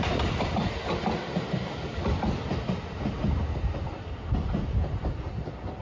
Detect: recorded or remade recorded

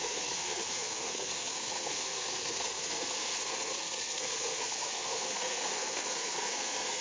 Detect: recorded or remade remade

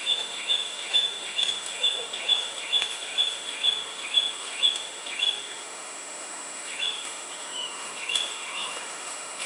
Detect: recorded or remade remade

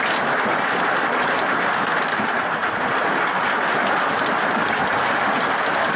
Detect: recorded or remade remade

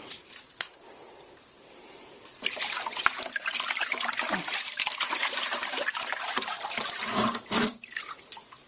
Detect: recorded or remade remade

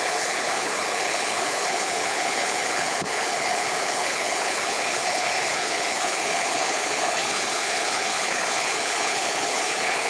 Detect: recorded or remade remade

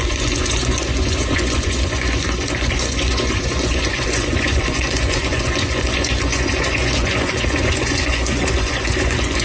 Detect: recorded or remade remade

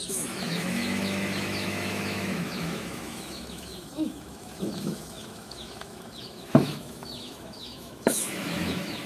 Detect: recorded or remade remade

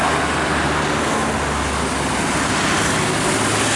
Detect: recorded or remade recorded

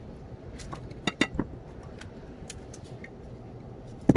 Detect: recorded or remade recorded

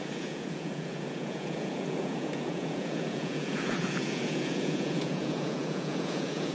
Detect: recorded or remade remade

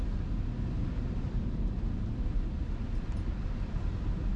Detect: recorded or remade recorded